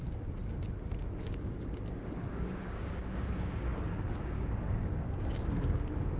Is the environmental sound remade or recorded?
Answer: remade